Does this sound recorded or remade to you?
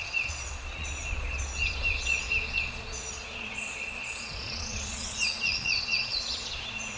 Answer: remade